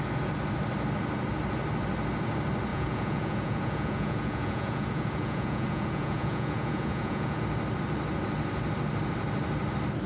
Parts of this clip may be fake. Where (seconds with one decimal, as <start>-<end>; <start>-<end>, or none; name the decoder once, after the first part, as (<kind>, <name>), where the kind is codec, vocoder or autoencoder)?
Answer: 2.7-7.4 (vocoder, Vocos)